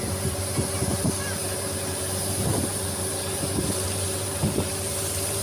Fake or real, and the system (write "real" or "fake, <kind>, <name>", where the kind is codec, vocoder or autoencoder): fake, vocoder, BigVGAN v2